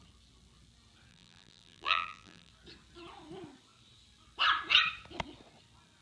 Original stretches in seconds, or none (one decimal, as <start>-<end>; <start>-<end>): 0.0-1.1; 2.5-6.0